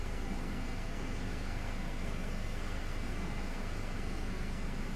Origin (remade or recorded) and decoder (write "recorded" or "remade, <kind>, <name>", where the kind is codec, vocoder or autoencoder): remade, codec, SNAC